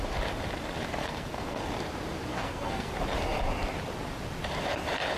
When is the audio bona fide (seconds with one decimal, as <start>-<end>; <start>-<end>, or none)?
0.0-1.0; 1.7-2.3; 2.9-5.2